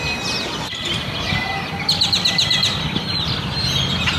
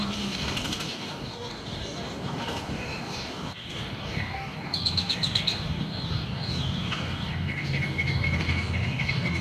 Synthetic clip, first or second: second